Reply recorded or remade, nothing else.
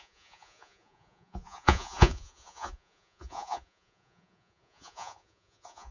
remade